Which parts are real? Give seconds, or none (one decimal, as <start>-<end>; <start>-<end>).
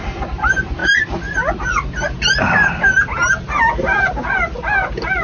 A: 0.0-5.2